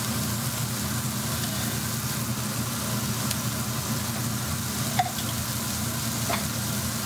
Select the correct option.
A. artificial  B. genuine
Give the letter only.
B